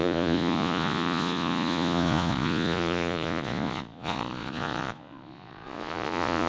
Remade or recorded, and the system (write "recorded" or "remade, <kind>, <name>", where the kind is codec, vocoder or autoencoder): remade, vocoder, Vocos